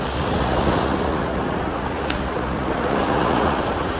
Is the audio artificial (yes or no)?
yes